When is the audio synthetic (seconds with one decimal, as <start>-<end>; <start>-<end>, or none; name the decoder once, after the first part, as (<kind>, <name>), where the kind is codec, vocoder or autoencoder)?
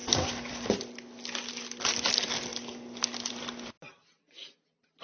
none